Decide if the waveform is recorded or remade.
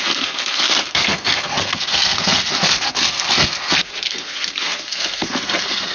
remade